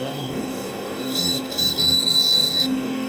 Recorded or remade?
remade